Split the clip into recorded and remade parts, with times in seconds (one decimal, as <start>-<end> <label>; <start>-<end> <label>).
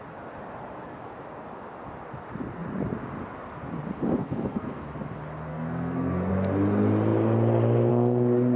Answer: 0.0-4.2 recorded; 4.2-4.8 remade; 4.8-5.5 recorded; 5.5-6.3 remade; 6.3-8.6 recorded